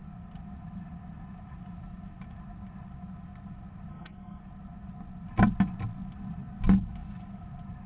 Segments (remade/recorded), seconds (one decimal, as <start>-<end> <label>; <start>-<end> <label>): 0.0-3.9 recorded; 3.9-4.4 remade; 4.4-7.9 recorded